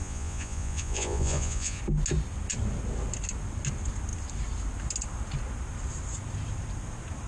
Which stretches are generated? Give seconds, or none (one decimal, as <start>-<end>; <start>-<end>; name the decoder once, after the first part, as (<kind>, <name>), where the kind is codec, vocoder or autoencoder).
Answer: 0.0-1.8 (vocoder, Vocos)